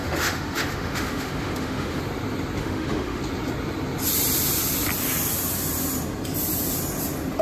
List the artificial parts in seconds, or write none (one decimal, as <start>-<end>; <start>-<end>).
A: 0.0-2.0; 2.6-3.2